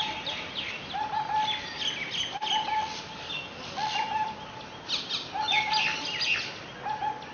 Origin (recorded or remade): recorded